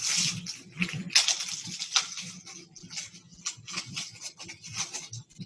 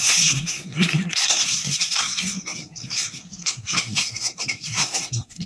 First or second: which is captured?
first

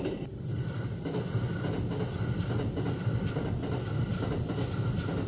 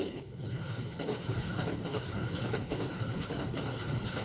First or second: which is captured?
first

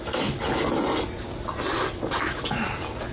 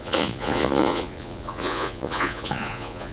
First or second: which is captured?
first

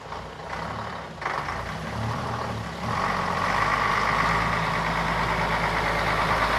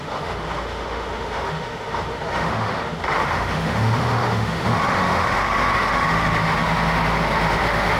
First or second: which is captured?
first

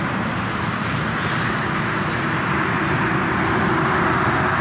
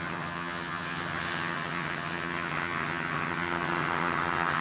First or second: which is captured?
first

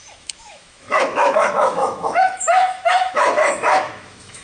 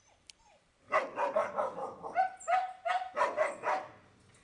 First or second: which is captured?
second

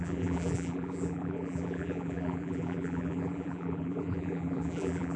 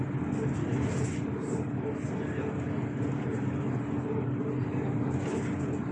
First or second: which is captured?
second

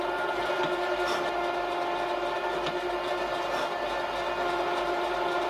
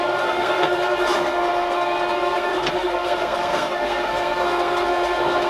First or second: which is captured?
first